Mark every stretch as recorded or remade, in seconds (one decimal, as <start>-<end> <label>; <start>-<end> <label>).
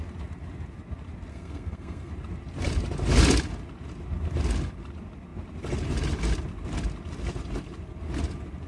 0.0-1.3 recorded; 1.3-2.1 remade; 2.1-8.7 recorded